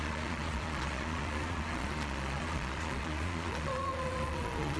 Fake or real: fake